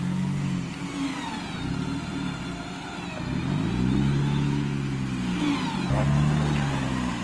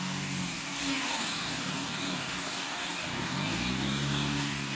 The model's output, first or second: second